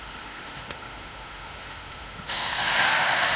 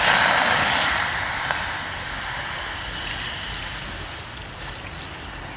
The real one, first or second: second